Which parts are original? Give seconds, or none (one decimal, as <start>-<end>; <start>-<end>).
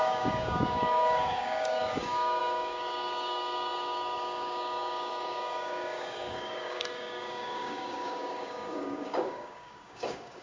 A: none